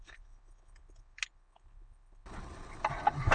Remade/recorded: recorded